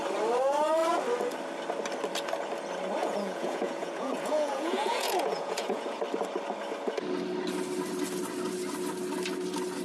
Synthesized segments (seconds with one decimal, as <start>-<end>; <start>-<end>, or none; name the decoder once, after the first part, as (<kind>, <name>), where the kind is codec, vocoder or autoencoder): 3.0-6.0 (vocoder, Vocos)